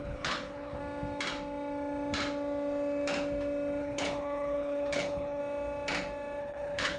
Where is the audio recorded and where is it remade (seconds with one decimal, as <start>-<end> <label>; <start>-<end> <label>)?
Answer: 0.0-0.8 remade; 0.8-3.8 recorded; 3.8-5.4 remade; 5.4-6.4 recorded; 6.4-7.0 remade

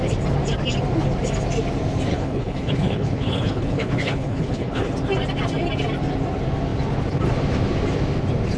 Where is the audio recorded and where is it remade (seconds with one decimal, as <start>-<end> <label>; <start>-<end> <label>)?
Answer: 0.0-2.1 recorded; 2.1-4.9 remade; 4.9-8.6 recorded

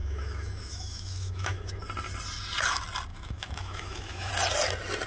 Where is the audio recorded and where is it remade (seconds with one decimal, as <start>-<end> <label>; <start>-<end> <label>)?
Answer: 0.0-1.8 remade; 1.8-3.1 recorded; 3.1-4.3 remade; 4.3-5.1 recorded

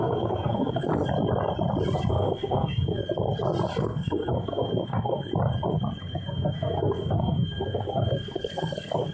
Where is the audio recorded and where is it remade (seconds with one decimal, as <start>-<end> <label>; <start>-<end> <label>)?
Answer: 0.0-0.9 remade; 0.9-2.1 recorded; 2.1-3.0 remade; 3.0-3.8 recorded; 3.8-5.3 remade; 5.3-6.0 recorded; 6.0-9.1 remade

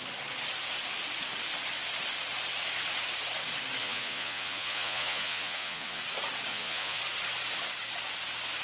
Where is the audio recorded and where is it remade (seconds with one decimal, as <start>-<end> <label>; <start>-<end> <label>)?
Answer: 0.0-3.8 recorded; 3.8-6.0 remade; 6.0-6.5 recorded; 6.5-7.0 remade; 7.0-8.6 recorded

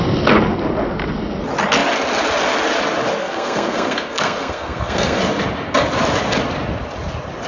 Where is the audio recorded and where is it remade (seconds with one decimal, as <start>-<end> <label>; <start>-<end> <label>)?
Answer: 0.0-3.2 recorded; 3.2-5.2 remade; 5.2-7.5 recorded